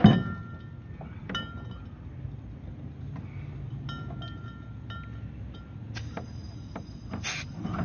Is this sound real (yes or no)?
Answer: yes